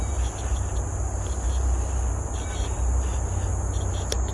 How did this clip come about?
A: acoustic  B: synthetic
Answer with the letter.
A